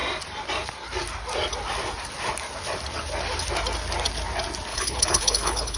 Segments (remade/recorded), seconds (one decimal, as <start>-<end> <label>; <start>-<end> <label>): 0.0-4.7 recorded; 4.7-5.8 remade